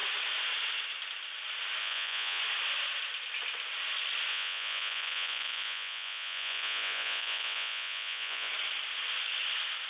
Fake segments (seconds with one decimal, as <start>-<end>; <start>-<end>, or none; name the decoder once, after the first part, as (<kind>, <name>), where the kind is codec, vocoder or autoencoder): 1.8-2.4 (vocoder, Vocos); 4.3-8.5